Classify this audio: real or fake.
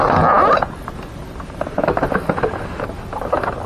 real